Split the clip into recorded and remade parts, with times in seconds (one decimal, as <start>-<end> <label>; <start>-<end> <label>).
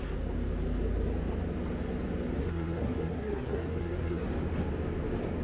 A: 0.0-2.4 recorded; 2.4-4.3 remade; 4.3-5.4 recorded